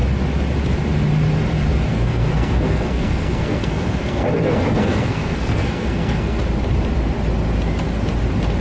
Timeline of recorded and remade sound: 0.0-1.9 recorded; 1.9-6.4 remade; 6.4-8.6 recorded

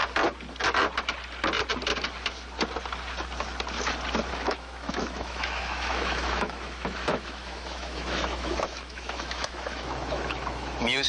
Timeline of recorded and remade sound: 0.0-4.3 recorded; 4.3-11.1 remade

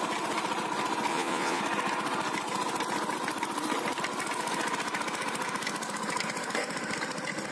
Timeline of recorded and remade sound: 0.0-1.1 recorded; 1.1-1.6 remade; 1.6-7.5 recorded

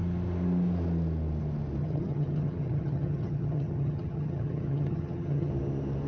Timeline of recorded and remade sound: 0.0-1.8 recorded; 1.8-5.5 remade; 5.5-6.1 recorded

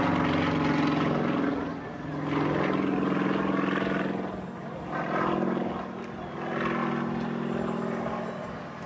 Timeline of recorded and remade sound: 0.0-8.9 recorded